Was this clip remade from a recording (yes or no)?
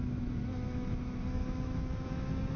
yes